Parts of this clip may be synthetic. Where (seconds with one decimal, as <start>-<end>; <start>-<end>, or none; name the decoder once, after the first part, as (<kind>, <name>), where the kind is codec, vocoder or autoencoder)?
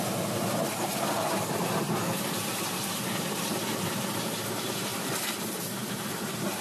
0.0-6.6 (vocoder, BigVGAN v2)